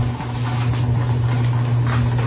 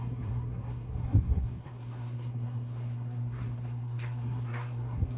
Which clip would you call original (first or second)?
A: first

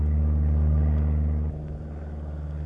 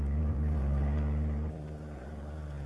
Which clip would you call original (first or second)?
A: first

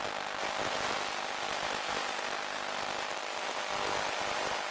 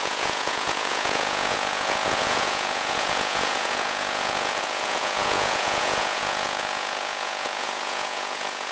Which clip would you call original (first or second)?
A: first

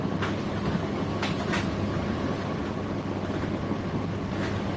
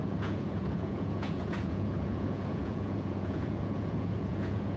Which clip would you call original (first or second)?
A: first